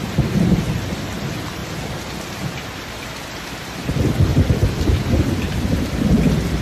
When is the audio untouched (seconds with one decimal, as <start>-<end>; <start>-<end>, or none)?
0.0-4.3; 6.0-6.6